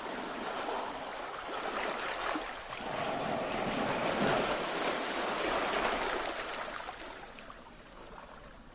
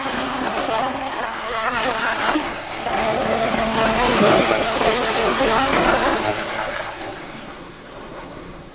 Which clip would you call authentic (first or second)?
first